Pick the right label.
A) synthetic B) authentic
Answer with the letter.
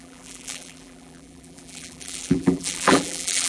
A